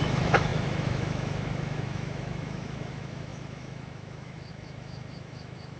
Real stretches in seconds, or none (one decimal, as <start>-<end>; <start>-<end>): none